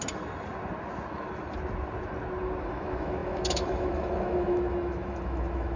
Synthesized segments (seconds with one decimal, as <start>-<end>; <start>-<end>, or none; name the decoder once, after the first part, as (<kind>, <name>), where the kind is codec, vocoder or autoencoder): 2.6-5.8 (autoencoder, DAC-VAE)